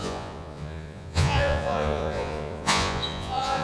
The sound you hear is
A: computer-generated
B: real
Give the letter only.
A